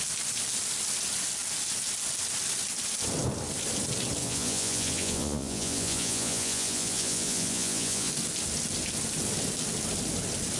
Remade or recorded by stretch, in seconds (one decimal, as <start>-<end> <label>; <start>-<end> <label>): 0.0-4.2 recorded; 4.2-8.1 remade; 8.1-10.6 recorded